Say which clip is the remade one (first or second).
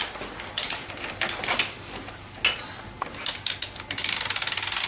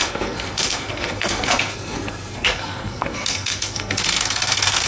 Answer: second